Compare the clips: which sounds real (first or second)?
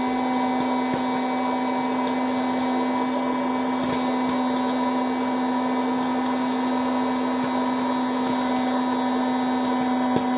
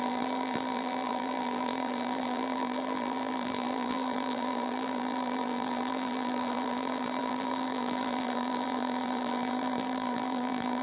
first